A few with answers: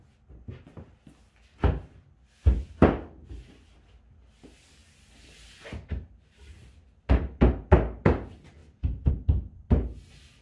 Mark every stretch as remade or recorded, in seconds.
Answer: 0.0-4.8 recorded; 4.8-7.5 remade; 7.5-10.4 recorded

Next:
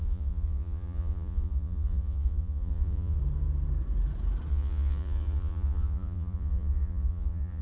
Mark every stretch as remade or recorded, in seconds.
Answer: 0.0-3.2 remade; 3.2-4.5 recorded; 4.5-7.6 remade

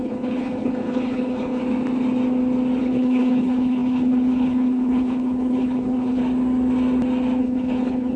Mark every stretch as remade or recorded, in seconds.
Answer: 0.0-1.6 remade; 1.6-2.8 recorded; 2.8-6.2 remade; 6.2-7.4 recorded; 7.4-8.2 remade

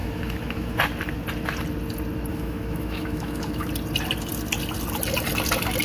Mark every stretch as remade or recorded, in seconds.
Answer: 0.0-0.8 remade; 0.8-2.3 recorded; 2.3-3.7 remade; 3.7-5.8 recorded

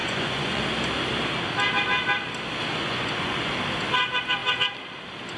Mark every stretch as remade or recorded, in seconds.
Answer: 0.0-0.6 remade; 0.6-2.7 recorded; 2.7-3.5 remade; 3.5-5.4 recorded

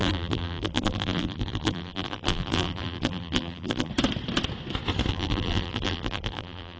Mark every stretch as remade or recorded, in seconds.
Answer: 0.0-3.9 remade; 3.9-5.1 recorded; 5.1-6.8 remade

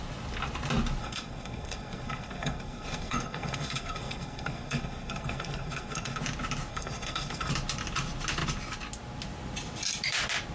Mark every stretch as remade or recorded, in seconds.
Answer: 0.0-1.0 recorded; 1.0-6.2 remade; 6.2-6.7 recorded; 6.7-7.5 remade; 7.5-10.5 recorded

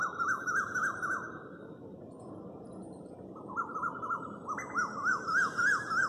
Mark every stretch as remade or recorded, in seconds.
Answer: 0.0-6.1 recorded